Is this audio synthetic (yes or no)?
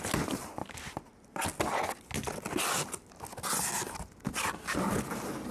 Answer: no